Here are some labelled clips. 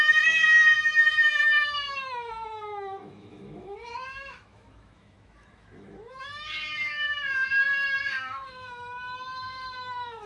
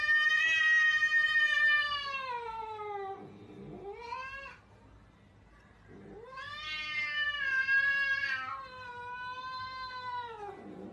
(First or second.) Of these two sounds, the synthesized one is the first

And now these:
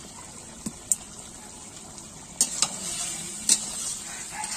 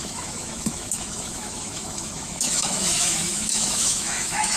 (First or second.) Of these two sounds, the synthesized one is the second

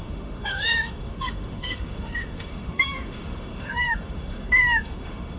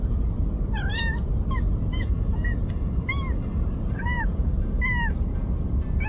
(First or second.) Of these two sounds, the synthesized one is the first